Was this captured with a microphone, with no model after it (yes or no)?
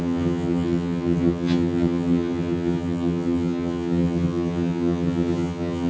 no